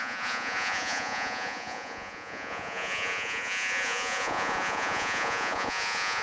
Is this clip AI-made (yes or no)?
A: yes